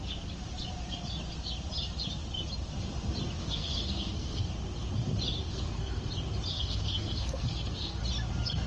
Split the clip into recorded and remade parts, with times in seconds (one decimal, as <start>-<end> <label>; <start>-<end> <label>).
0.0-3.4 recorded; 3.4-4.4 remade; 4.4-5.4 recorded; 5.4-6.1 remade; 6.1-6.5 recorded; 6.5-8.0 remade; 8.0-8.7 recorded